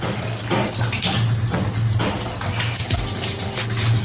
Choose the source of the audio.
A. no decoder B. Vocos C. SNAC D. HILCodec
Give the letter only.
A